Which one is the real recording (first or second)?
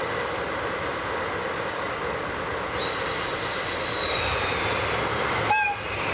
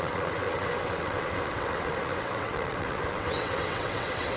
first